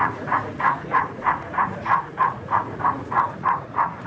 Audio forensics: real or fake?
fake